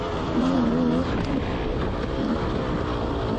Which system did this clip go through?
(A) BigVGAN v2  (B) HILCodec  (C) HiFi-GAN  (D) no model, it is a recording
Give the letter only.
D